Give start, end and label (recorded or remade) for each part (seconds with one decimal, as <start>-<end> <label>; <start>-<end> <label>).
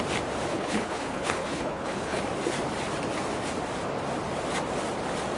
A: 0.0-0.5 recorded; 0.5-2.2 remade; 2.2-5.4 recorded